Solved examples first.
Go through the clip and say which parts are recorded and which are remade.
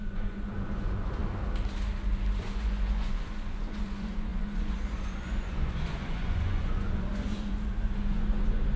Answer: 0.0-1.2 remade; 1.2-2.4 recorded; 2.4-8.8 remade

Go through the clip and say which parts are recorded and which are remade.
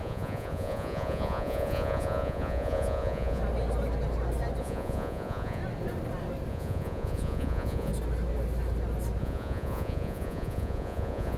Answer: 0.0-3.4 remade; 3.4-4.6 recorded; 4.6-5.6 remade; 5.6-6.5 recorded; 6.5-7.9 remade; 7.9-9.2 recorded; 9.2-11.4 remade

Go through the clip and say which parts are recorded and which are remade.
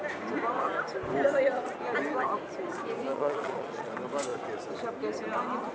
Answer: 0.0-3.1 recorded; 3.1-3.9 remade; 3.9-5.7 recorded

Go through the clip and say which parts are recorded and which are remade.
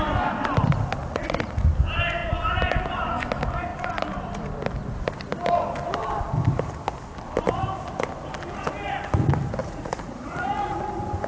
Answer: 0.0-1.0 recorded; 1.0-1.6 remade; 1.6-9.6 recorded; 9.6-10.8 remade; 10.8-11.3 recorded